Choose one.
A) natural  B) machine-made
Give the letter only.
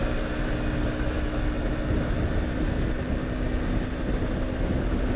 A